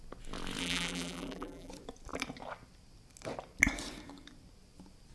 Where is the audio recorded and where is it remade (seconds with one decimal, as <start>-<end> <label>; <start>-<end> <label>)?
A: 0.0-0.6 recorded; 0.6-1.7 remade; 1.7-5.1 recorded